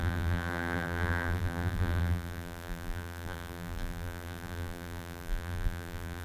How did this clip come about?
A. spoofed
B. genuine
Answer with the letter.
A